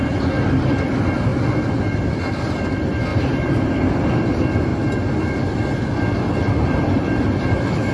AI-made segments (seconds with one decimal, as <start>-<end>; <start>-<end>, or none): 0.0-1.3; 2.3-3.1; 3.8-4.7; 6.5-7.9